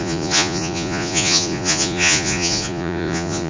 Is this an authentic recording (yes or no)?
no